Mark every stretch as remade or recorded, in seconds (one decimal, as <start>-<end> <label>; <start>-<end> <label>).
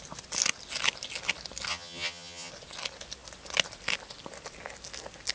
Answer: 0.0-1.7 recorded; 1.7-2.5 remade; 2.5-5.3 recorded